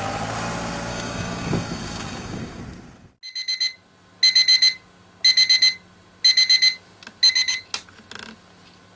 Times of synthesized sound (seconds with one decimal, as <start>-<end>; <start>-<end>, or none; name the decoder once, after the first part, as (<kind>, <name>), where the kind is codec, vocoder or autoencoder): 0.9-2.6 (codec, DAC)